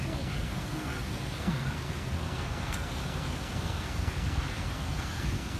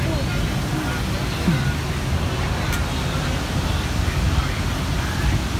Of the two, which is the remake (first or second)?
first